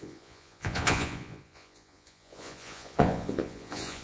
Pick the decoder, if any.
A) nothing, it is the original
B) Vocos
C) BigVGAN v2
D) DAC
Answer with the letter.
B